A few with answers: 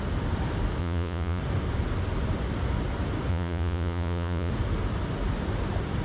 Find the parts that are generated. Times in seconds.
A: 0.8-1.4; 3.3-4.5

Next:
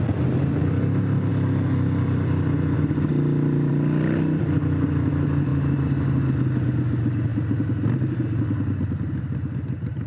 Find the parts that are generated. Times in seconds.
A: none